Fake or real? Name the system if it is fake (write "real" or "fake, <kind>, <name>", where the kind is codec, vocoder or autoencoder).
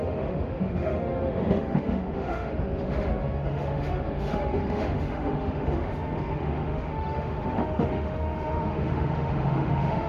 fake, autoencoder, DAC-VAE